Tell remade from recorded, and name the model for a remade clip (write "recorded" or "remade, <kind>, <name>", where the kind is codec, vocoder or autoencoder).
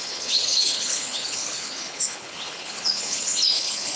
remade, codec, HILCodec